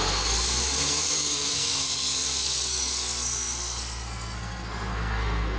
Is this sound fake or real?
fake